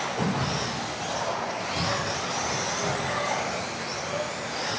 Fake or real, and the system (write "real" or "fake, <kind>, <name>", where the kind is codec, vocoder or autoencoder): real